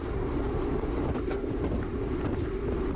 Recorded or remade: recorded